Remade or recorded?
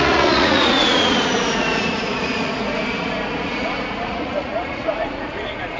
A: remade